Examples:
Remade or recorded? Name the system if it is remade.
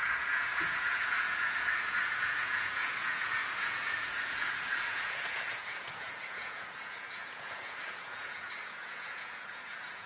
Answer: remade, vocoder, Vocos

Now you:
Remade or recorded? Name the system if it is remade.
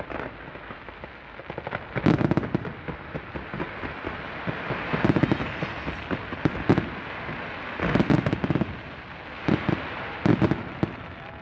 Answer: recorded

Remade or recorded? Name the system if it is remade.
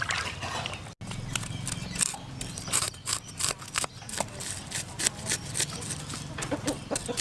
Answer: recorded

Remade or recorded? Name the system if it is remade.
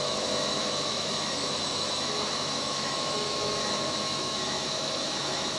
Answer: remade, autoencoder, DAC-VAE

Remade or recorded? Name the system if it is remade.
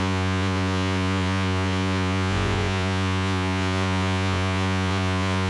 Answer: remade, vocoder, Vocos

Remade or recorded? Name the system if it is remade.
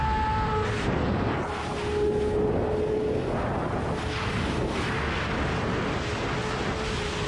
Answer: recorded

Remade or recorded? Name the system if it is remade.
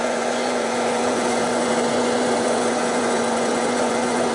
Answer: remade, vocoder, Vocos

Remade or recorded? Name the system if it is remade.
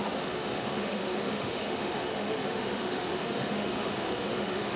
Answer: remade, autoencoder, DAC-VAE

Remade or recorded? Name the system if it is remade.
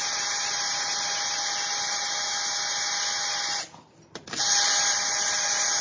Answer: recorded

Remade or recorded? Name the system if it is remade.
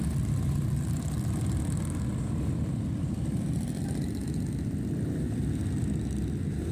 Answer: recorded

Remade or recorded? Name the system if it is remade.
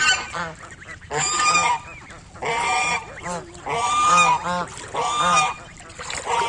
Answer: recorded